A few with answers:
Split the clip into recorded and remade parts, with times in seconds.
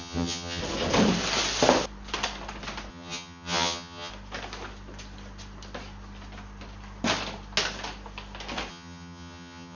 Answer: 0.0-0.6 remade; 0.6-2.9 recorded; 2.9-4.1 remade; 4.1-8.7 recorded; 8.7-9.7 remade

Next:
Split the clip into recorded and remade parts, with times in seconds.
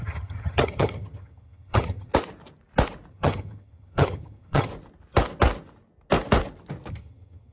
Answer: 0.0-2.1 remade; 2.1-3.1 recorded; 3.1-4.7 remade; 4.7-6.9 recorded; 6.9-7.5 remade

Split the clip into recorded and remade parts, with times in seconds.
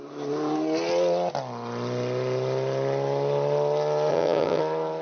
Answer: 0.0-4.1 recorded; 4.1-4.6 remade; 4.6-5.0 recorded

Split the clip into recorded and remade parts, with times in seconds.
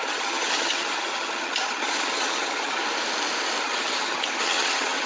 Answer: 0.0-2.8 remade; 2.8-3.6 recorded; 3.6-5.1 remade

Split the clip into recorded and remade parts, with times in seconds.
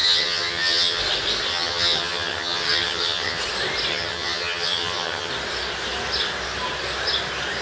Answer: 0.0-1.0 remade; 1.0-1.5 recorded; 1.5-3.4 remade; 3.4-3.9 recorded; 3.9-5.3 remade; 5.3-7.6 recorded